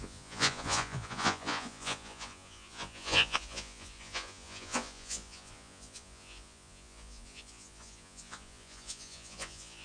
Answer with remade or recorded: remade